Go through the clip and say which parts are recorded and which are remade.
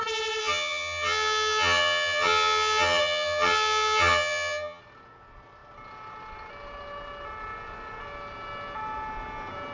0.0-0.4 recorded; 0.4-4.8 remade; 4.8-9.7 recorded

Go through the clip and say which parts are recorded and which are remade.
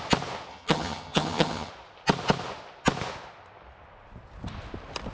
0.0-0.5 recorded; 0.5-1.7 remade; 1.7-5.1 recorded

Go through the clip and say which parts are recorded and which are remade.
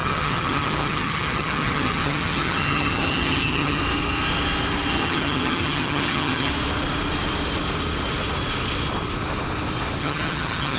0.0-3.8 remade; 3.8-4.9 recorded; 4.9-6.5 remade; 6.5-10.0 recorded; 10.0-10.8 remade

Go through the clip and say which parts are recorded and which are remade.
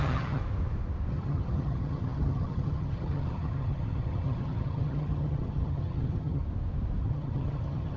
0.0-0.4 remade; 0.4-1.1 recorded; 1.1-6.4 remade; 6.4-7.0 recorded; 7.0-8.0 remade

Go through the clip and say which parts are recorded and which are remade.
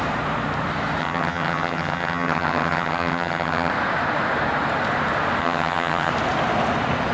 0.0-1.0 recorded; 1.0-3.7 remade; 3.7-5.4 recorded; 5.4-6.1 remade; 6.1-7.1 recorded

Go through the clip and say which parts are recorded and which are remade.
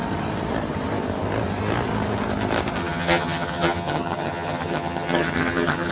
0.0-2.8 recorded; 2.8-5.9 remade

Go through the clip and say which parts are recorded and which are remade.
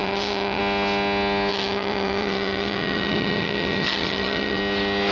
0.0-0.6 remade; 0.6-1.5 recorded; 1.5-4.6 remade; 4.6-5.1 recorded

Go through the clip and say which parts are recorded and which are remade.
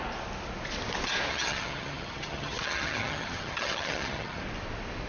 0.0-1.3 recorded; 1.3-4.4 remade; 4.4-5.1 recorded